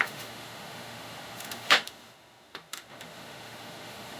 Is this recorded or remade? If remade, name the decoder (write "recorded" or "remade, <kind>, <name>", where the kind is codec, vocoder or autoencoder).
remade, autoencoder, DAC-VAE